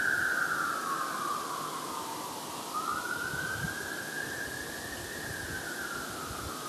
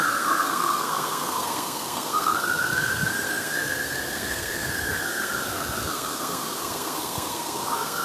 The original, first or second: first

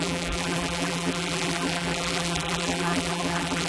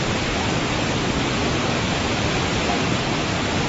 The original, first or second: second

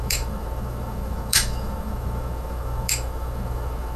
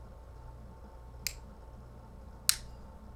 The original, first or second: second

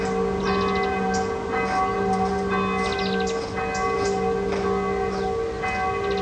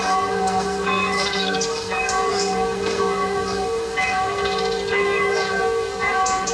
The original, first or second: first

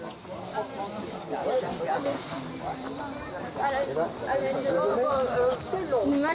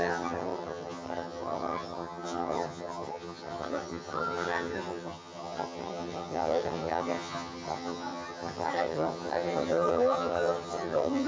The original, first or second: first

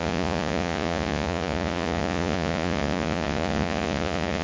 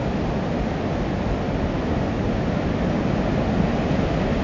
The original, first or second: second